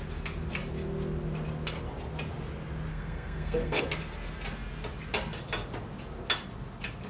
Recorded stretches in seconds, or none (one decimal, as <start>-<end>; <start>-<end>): 0.0-2.9; 3.8-7.1